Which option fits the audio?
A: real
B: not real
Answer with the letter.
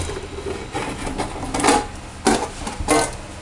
A